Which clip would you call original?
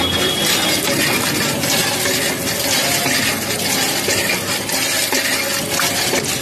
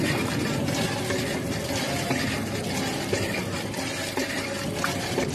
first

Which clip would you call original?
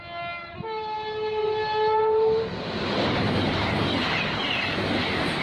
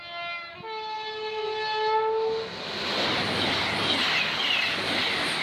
second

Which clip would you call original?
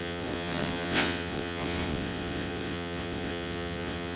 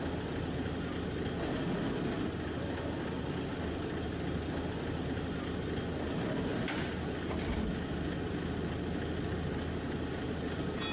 second